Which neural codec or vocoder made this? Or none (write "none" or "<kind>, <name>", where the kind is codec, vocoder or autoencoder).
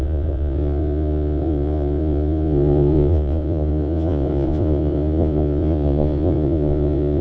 vocoder, Vocos